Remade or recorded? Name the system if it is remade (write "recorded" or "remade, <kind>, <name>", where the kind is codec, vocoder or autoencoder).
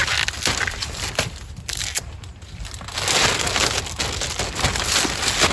recorded